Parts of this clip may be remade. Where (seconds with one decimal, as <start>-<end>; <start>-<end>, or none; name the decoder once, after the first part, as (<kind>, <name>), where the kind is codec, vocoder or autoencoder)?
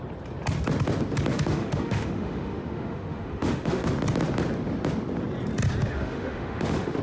1.3-3.9 (autoencoder, DAC-VAE); 5.8-7.0